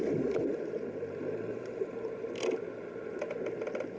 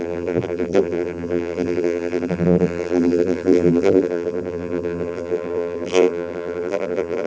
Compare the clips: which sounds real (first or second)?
first